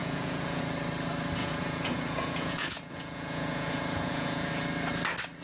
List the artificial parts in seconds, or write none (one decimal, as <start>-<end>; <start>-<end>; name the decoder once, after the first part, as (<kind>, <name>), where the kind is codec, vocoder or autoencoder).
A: 0.0-0.6 (vocoder, Vocos); 1.4-4.6